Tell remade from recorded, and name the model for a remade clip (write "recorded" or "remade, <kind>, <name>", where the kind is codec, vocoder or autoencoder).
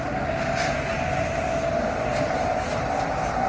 recorded